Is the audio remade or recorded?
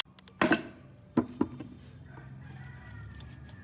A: recorded